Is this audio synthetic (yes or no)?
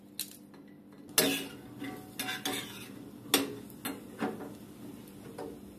no